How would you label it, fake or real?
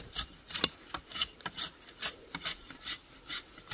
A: real